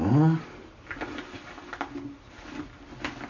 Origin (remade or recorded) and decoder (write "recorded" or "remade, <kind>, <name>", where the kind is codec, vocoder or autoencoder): recorded